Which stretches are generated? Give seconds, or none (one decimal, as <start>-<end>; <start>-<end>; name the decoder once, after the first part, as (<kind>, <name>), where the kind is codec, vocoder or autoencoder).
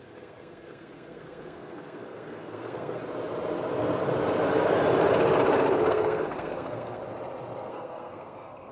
0.0-3.0 (codec, SNAC); 5.9-7.0; 7.7-8.7